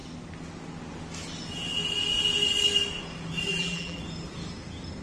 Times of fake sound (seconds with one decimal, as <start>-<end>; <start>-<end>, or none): 3.5-4.0